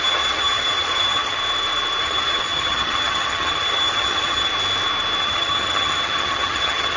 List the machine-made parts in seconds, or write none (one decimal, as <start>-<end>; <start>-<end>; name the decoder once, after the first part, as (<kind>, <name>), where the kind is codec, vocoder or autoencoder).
0.0-1.4 (vocoder, HiFi-GAN); 2.0-4.5; 5.2-7.0